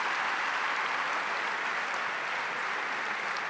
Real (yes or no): yes